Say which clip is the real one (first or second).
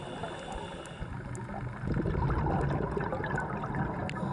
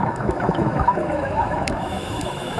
first